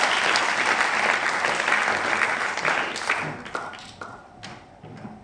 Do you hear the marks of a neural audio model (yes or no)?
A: no